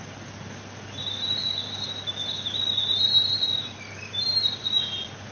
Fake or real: real